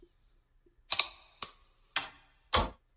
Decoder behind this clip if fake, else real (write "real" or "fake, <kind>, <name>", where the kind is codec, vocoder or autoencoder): real